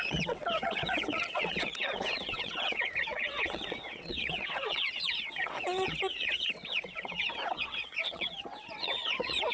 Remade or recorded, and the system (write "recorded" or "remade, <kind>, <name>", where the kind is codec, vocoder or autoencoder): remade, vocoder, WaveNeXt